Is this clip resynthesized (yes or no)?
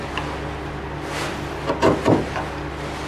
no